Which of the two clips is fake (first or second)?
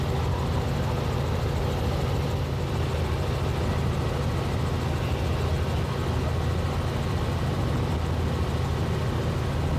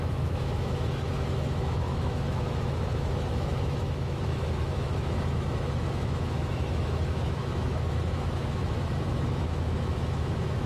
second